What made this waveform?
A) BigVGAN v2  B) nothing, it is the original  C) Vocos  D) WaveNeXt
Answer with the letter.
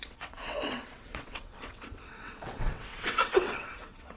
D